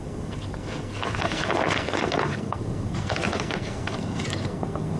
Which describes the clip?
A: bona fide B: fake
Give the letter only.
B